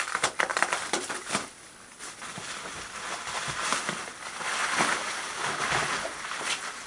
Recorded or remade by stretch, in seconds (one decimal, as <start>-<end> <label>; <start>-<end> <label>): 0.0-3.7 remade; 3.7-4.2 recorded; 4.2-6.9 remade